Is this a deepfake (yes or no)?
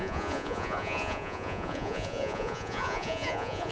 yes